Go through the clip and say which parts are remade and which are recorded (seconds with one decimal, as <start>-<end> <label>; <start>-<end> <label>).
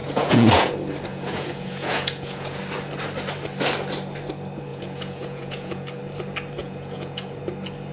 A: 0.0-0.7 remade; 0.7-1.1 recorded; 1.1-2.6 remade; 2.6-4.7 recorded; 4.7-6.0 remade; 6.0-6.6 recorded; 6.6-7.4 remade; 7.4-7.9 recorded